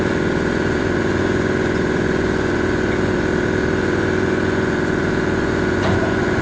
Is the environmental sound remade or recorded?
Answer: remade